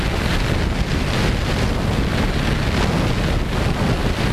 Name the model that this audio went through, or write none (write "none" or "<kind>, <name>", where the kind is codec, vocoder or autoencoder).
none